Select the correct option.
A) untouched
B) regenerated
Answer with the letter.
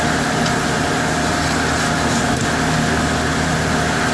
A